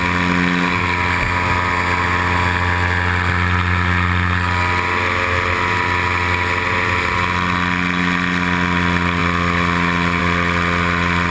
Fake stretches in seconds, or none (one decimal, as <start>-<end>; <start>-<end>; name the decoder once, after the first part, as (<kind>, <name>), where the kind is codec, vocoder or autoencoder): none

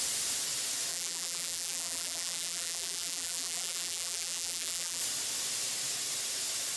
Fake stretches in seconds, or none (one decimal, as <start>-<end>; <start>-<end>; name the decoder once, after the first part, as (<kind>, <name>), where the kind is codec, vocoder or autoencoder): 0.9-5.0 (vocoder, BigVGAN v2)

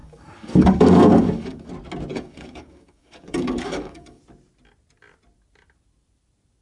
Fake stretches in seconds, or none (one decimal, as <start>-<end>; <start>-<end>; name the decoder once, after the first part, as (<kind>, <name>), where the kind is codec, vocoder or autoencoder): 0.0-1.7 (codec, DAC); 2.1-4.2